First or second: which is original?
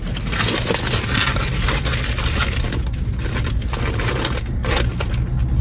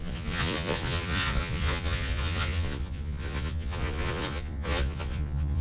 first